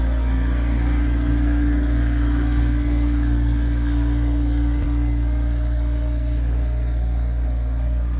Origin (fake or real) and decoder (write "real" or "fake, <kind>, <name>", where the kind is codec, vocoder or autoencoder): fake, codec, SNAC